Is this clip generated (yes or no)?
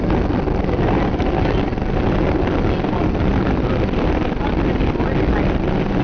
no